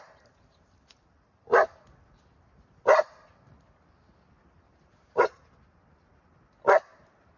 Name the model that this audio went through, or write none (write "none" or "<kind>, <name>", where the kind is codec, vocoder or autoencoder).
none